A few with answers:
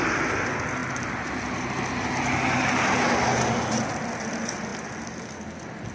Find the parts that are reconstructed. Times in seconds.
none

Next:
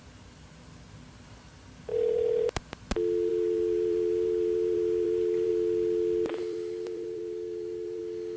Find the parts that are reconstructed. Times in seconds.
3.3-5.5 (vocoder, BigVGAN v2); 6.3-8.0

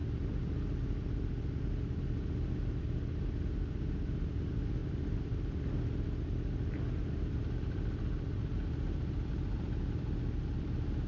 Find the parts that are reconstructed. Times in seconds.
none

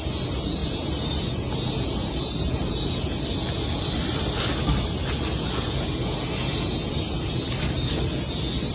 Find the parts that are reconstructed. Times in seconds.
0.6-2.9 (vocoder, Vocos); 5.3-6.9

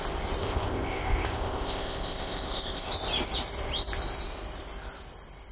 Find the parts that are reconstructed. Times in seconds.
0.4-2.9 (codec, ZipCodec)

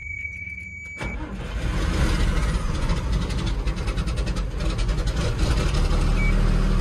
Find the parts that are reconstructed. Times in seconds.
0.0-0.8 (vocoder, Vocos); 2.4-3.0; 4.8-5.5

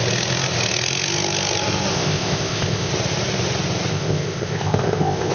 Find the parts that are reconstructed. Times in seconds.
1.9-2.9 (codec, ZipCodec); 3.9-5.3

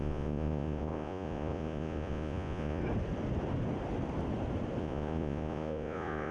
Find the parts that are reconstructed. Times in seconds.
0.0-2.8 (vocoder, Vocos); 4.8-6.3